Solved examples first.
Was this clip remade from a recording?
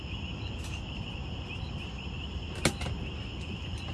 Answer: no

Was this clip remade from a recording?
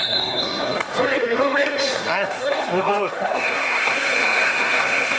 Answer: yes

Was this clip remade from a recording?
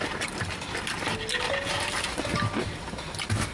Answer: no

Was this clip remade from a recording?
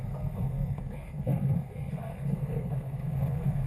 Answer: yes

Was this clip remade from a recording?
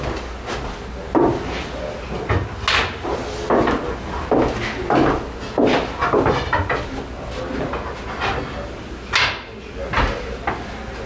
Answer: no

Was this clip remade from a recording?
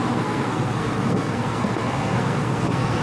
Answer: yes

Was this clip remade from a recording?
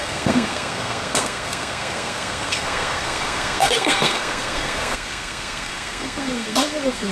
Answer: yes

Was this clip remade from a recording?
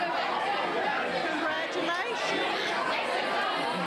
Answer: no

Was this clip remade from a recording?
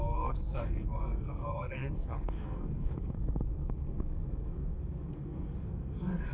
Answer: yes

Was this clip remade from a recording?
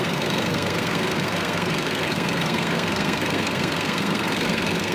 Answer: yes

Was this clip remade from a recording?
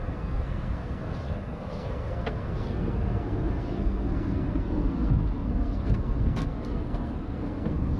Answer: yes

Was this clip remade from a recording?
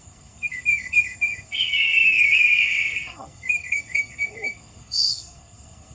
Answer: yes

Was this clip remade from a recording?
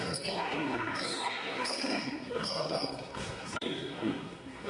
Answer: yes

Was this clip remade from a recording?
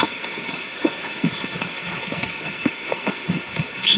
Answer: yes